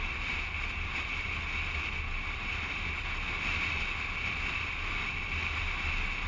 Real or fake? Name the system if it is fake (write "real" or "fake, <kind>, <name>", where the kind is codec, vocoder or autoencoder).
real